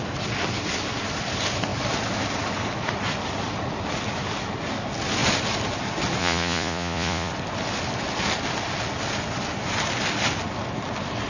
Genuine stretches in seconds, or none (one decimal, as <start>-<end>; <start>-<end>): 0.0-6.2; 7.3-11.3

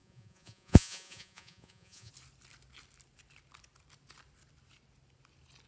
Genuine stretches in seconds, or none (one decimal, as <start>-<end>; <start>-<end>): 2.1-5.7

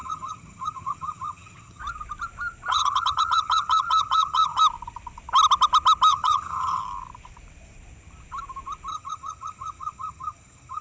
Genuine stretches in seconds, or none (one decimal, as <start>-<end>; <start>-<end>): 1.8-2.7; 4.6-6.1; 6.8-8.9